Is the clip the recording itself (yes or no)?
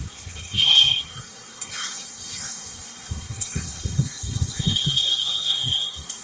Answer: no